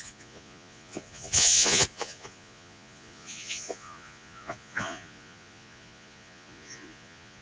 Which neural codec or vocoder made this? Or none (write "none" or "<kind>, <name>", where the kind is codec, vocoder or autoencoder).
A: vocoder, Vocos